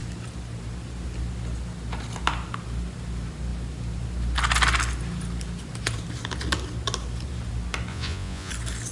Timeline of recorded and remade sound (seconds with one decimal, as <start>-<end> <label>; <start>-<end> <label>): 0.0-7.9 recorded; 7.9-8.5 remade; 8.5-8.9 recorded